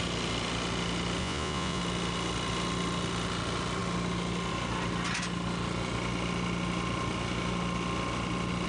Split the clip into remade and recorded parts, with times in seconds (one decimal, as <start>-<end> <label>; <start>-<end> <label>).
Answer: 0.0-1.2 recorded; 1.2-1.8 remade; 1.8-8.7 recorded